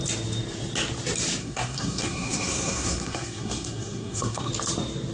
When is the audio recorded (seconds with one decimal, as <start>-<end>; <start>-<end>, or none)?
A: 0.0-1.4; 4.5-5.1